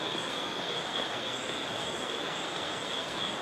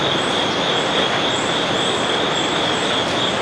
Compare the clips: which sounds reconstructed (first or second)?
first